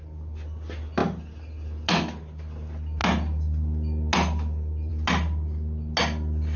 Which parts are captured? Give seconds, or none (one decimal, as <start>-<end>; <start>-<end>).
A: 0.0-6.6